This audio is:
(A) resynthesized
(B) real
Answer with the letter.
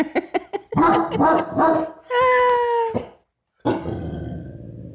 B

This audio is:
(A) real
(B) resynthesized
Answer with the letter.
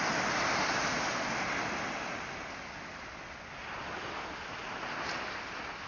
A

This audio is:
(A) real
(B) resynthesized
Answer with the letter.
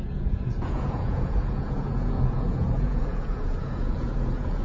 B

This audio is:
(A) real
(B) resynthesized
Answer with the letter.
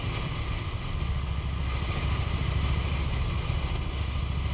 A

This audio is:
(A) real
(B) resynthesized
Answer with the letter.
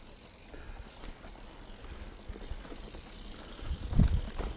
A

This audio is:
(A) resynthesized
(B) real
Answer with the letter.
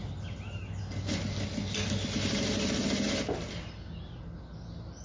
B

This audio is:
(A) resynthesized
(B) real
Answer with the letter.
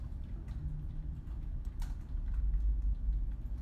B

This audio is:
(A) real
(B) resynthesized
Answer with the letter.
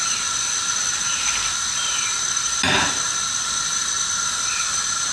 A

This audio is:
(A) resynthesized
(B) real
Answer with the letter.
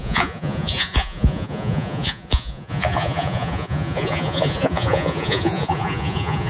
A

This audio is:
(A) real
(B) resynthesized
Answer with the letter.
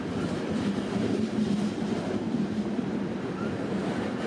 A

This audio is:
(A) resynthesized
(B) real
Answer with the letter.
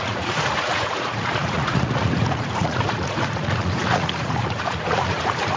A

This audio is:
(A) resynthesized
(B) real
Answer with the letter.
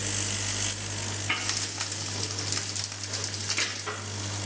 B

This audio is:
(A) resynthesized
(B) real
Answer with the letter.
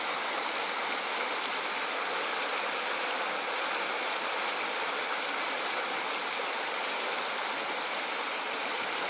B